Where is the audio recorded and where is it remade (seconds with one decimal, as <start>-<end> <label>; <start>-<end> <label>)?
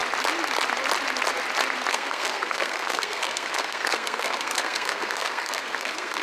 0.0-1.9 recorded; 1.9-6.2 remade